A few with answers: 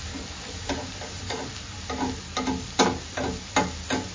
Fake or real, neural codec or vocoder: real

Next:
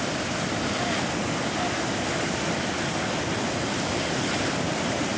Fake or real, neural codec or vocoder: real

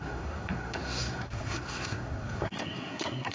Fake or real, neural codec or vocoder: fake, codec, SNAC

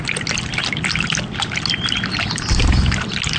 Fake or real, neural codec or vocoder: real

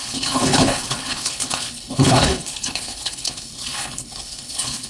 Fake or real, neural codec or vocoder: fake, codec, HILCodec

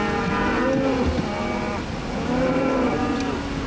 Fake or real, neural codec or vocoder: real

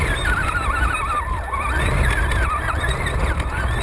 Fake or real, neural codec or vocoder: fake, vocoder, BigVGAN v2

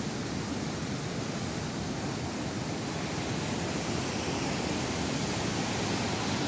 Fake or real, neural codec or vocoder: real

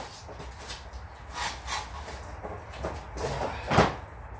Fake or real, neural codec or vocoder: real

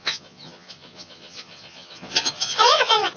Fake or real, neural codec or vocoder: fake, vocoder, Vocos